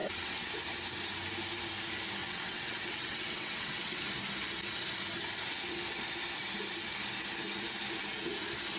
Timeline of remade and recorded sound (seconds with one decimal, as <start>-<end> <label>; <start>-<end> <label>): 0.0-0.6 remade; 0.6-2.2 recorded; 2.2-4.0 remade; 4.0-8.8 recorded